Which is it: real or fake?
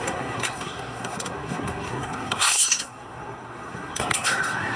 fake